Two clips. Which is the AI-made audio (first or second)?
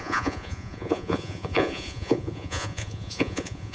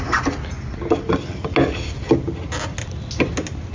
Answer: first